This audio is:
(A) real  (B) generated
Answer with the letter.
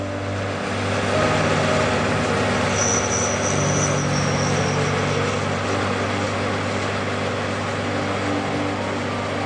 A